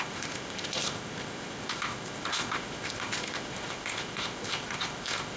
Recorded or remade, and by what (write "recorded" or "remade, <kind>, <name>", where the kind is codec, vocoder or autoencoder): remade, codec, ZipCodec